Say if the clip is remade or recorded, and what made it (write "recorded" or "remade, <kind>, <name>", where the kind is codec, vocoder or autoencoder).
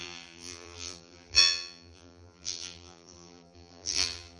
remade, vocoder, BigVGAN v2